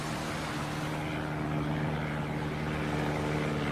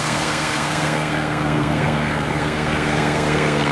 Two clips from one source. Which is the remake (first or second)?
second